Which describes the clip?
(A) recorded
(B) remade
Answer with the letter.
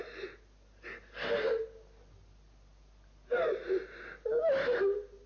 A